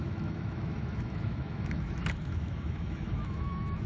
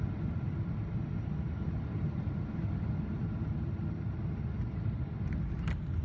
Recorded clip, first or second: second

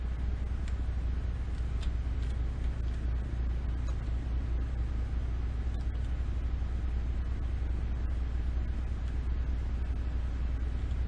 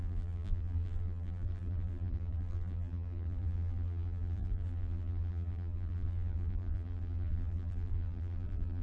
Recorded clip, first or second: first